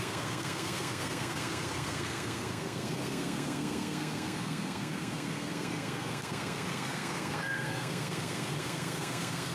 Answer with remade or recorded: remade